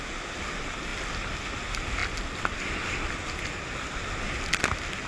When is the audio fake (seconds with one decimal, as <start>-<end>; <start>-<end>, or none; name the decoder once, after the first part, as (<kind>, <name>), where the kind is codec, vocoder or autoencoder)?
none